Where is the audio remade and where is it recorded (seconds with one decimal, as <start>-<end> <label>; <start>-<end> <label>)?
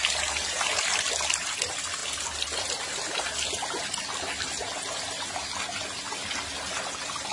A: 0.0-7.3 recorded